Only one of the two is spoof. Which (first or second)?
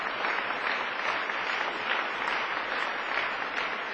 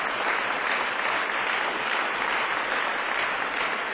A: second